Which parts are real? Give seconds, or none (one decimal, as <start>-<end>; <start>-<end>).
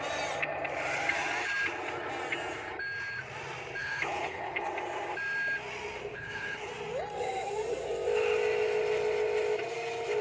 0.0-3.8; 4.7-6.1; 6.7-10.2